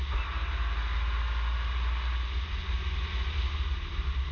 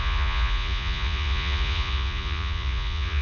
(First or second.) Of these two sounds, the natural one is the first